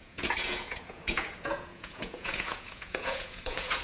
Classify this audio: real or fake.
fake